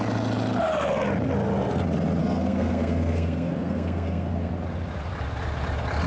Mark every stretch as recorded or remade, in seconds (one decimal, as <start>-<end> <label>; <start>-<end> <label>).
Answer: 0.0-2.2 recorded; 2.2-4.5 remade; 4.5-6.1 recorded